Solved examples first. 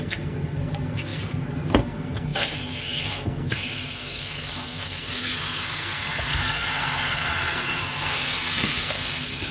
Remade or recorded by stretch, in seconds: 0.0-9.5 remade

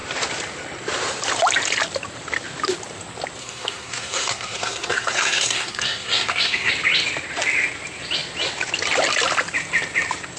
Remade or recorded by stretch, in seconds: 0.0-3.4 recorded; 3.4-6.7 remade; 6.7-10.4 recorded